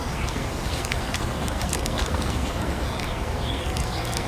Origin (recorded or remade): remade